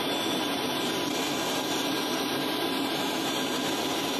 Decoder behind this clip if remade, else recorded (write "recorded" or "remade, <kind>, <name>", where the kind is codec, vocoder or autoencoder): remade, vocoder, BigVGAN v2